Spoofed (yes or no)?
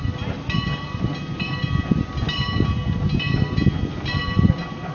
no